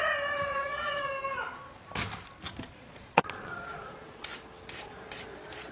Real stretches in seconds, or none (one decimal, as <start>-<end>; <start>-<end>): 0.0-0.5; 1.1-2.6; 4.2-4.8